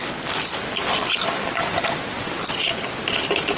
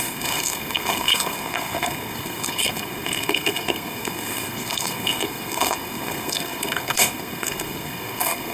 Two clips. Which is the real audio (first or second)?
first